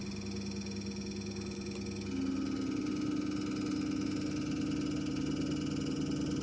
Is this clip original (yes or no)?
yes